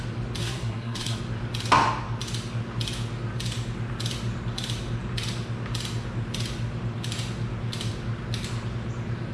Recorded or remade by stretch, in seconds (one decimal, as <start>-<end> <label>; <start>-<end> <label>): 0.0-0.4 recorded; 0.4-1.2 remade; 1.2-9.3 recorded